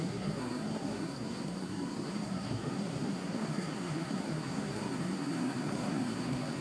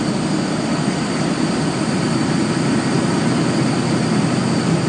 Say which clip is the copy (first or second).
first